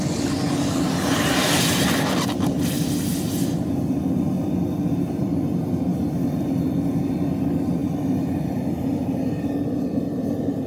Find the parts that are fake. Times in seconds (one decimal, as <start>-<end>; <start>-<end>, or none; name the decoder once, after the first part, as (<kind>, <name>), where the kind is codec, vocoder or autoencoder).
none